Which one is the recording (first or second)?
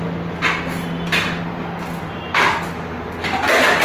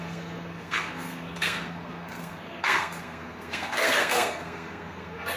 first